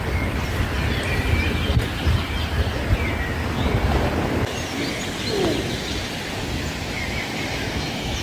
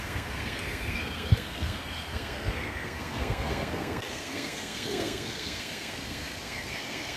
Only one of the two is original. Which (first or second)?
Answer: first